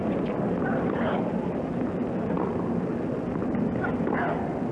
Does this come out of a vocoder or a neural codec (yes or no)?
no